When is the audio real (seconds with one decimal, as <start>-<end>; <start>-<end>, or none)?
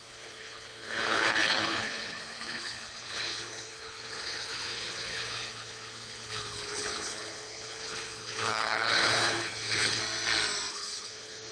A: 10.0-10.7